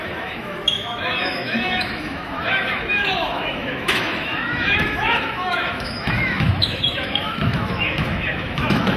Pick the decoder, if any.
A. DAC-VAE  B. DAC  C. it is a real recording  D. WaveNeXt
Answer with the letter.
A